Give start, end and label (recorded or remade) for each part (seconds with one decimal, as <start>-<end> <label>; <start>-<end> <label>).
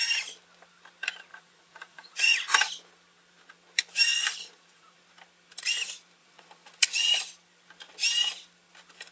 0.0-1.3 recorded; 1.3-2.5 remade; 2.5-4.1 recorded; 4.1-5.0 remade; 5.0-6.2 recorded; 6.2-7.1 remade; 7.1-9.1 recorded